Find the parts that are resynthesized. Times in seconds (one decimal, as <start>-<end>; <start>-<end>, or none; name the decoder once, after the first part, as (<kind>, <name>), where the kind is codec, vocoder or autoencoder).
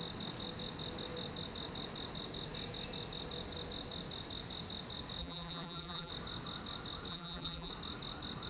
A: 5.2-6.1 (vocoder, BigVGAN v2); 7.1-7.7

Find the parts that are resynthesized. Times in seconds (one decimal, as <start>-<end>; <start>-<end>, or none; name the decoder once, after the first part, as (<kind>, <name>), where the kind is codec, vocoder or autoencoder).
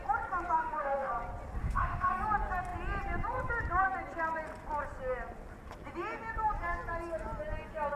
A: 0.6-1.1 (autoencoder, DAC-VAE); 1.6-2.1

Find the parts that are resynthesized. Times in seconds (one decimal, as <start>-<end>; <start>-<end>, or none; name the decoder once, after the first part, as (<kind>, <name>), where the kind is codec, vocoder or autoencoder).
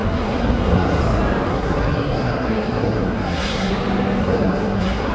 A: 0.0-1.0 (codec, SNAC); 1.5-3.7; 4.2-5.1